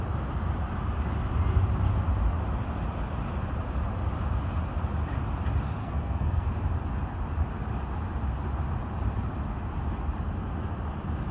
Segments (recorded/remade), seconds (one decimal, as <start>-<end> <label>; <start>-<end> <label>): 0.0-5.8 recorded; 5.8-6.5 remade; 6.5-11.3 recorded